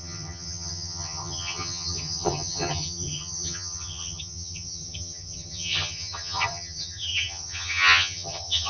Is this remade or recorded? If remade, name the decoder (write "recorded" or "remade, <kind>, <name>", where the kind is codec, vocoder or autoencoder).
remade, vocoder, HiFi-GAN